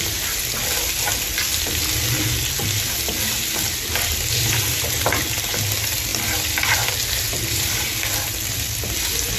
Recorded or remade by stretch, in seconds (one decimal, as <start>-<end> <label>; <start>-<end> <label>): 0.0-9.4 recorded